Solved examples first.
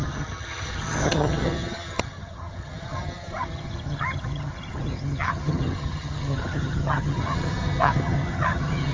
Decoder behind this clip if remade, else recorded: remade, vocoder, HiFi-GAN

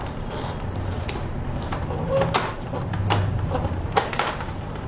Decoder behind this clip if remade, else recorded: remade, vocoder, BigVGAN v2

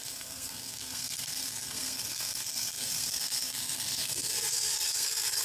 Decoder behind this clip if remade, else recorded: remade, codec, SNAC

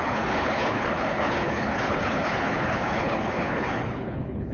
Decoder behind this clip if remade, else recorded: remade, codec, HILCodec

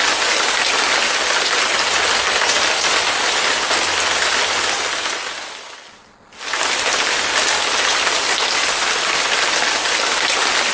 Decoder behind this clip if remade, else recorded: recorded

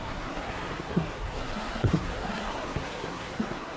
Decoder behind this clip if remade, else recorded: remade, codec, SNAC